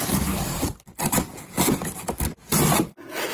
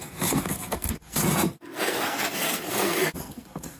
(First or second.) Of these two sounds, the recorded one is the first